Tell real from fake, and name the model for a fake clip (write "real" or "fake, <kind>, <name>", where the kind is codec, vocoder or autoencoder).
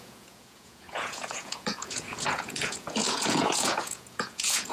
fake, vocoder, Vocos